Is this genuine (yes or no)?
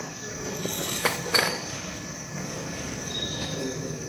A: no